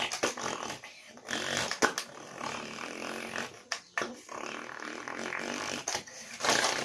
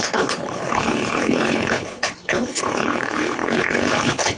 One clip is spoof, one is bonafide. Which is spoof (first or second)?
second